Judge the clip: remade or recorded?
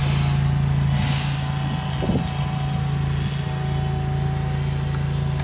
recorded